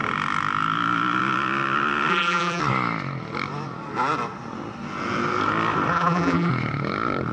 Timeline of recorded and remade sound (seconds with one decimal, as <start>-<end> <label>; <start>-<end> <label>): 0.0-2.1 recorded; 2.1-2.6 remade; 2.6-5.9 recorded; 5.9-6.5 remade; 6.5-7.3 recorded